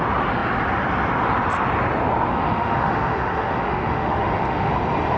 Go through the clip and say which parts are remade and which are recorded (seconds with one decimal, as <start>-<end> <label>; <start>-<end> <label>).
0.0-2.3 recorded; 2.3-4.7 remade; 4.7-5.2 recorded